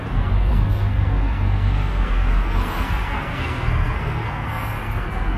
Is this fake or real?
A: fake